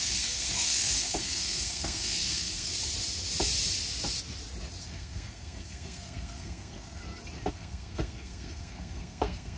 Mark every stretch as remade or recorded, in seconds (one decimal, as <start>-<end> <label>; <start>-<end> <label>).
0.0-2.7 remade; 2.7-4.8 recorded; 4.8-7.0 remade; 7.0-7.5 recorded; 7.5-9.6 remade